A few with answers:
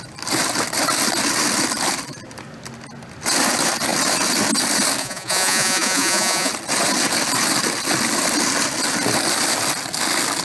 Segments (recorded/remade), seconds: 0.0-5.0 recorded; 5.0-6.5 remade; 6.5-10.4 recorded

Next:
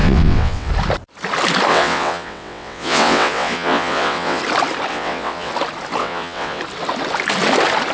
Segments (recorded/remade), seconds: 0.0-0.7 remade; 0.7-1.7 recorded; 1.7-4.4 remade; 4.4-4.9 recorded; 4.9-5.5 remade; 5.5-6.0 recorded; 6.0-6.6 remade; 6.6-7.9 recorded

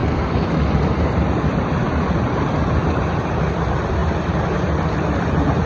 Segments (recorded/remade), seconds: 0.0-0.5 remade; 0.5-5.7 recorded

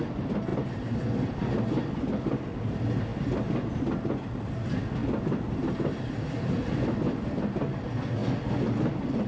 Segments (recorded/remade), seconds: 0.0-9.3 recorded

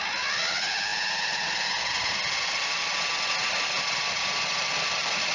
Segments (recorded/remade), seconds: 0.0-5.3 recorded

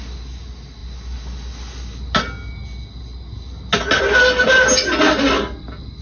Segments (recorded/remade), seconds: 0.0-6.0 recorded

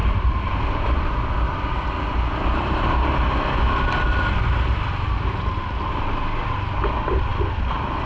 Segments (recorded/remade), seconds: 0.0-8.1 recorded